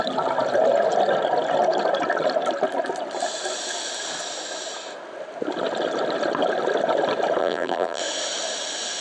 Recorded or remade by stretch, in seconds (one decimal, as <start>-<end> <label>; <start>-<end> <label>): 0.0-7.4 recorded; 7.4-8.0 remade; 8.0-9.0 recorded